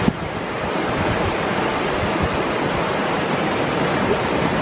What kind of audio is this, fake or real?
real